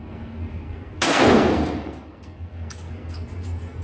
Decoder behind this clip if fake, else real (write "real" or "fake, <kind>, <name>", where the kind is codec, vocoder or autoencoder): fake, codec, SNAC